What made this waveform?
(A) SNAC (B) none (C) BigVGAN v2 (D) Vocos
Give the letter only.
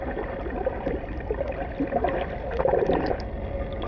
B